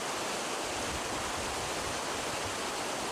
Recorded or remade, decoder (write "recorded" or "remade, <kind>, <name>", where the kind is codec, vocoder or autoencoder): recorded